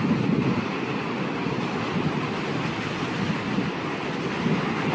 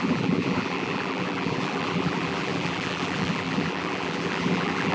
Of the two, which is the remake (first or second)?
second